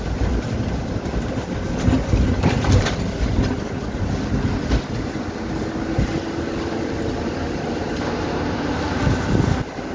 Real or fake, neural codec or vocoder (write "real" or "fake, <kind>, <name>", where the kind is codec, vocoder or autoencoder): real